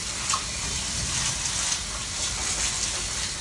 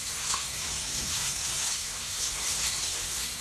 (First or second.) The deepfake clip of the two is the second